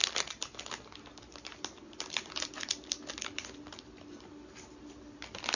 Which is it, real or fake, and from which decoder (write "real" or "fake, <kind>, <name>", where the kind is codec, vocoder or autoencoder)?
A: real